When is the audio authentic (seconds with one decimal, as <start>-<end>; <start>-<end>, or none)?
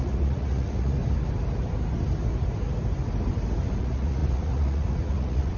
1.0-3.8